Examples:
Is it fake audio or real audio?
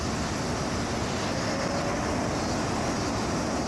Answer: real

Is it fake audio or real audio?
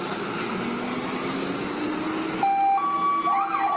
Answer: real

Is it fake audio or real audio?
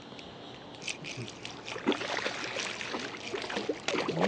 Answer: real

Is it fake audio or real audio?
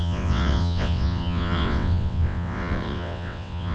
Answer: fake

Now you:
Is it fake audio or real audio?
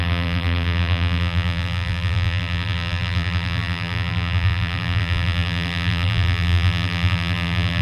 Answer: fake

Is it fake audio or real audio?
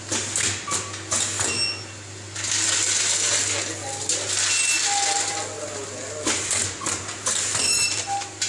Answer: real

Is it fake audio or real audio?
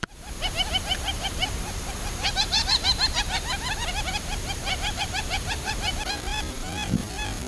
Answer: fake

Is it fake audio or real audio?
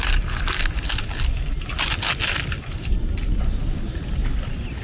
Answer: real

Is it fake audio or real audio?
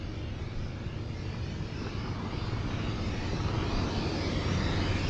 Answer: real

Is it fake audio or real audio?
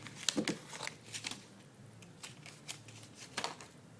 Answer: real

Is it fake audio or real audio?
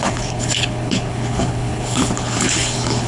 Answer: fake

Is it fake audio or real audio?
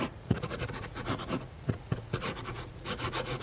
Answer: fake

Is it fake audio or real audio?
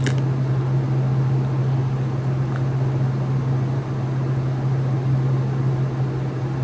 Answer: real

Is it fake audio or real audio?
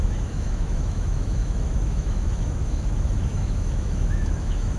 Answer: fake